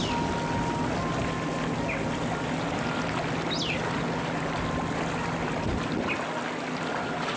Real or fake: real